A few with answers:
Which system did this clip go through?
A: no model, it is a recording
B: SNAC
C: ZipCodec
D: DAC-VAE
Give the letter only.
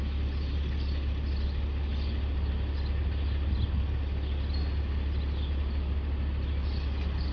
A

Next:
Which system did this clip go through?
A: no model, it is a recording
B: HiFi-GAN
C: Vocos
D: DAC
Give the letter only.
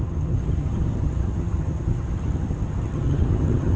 B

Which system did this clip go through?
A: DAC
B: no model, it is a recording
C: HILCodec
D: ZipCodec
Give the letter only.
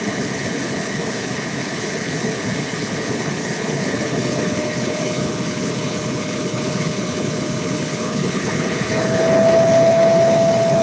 C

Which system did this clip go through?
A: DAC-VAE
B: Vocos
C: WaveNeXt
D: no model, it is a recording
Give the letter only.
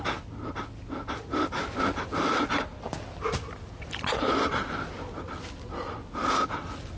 D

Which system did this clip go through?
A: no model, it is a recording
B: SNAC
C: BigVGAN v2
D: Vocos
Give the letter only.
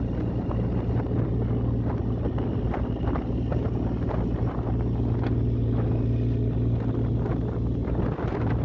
A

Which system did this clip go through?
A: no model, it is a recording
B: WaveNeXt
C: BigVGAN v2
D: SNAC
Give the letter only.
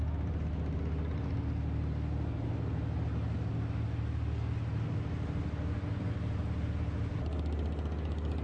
A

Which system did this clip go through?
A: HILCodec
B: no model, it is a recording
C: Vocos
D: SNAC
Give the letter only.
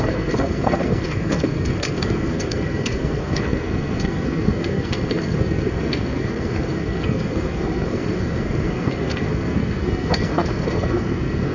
D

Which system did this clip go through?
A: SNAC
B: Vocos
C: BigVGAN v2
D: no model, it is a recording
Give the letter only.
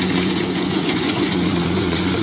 B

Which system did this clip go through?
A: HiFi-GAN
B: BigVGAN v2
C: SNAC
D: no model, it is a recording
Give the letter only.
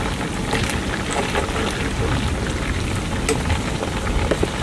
D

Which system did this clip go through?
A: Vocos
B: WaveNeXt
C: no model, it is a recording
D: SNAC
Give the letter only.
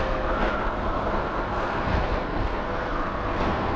D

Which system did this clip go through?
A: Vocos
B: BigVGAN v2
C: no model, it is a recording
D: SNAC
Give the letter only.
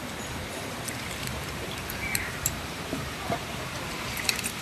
B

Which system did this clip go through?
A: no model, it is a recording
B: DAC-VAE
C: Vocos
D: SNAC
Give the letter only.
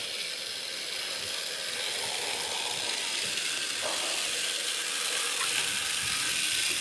A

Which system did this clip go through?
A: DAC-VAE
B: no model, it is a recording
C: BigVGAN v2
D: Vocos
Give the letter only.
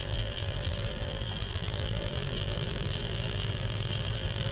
C